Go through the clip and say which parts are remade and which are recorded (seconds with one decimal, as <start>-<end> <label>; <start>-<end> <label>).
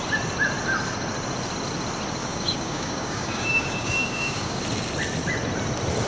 0.0-2.2 recorded; 2.2-4.6 remade; 4.6-6.1 recorded